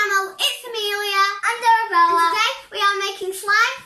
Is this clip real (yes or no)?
yes